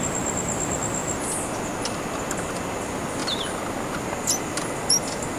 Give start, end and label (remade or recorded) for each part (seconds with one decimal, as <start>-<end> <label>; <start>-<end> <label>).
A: 0.0-5.4 recorded